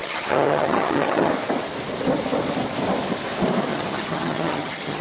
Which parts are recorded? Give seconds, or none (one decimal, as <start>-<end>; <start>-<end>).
1.3-3.7